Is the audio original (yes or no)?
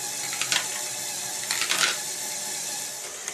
yes